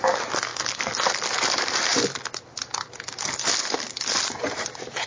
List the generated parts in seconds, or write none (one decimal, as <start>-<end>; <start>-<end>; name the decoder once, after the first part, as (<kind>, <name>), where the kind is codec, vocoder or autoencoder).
none